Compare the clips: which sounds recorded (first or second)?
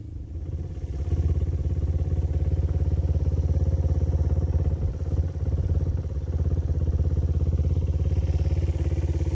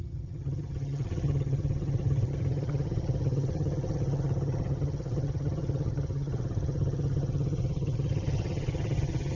first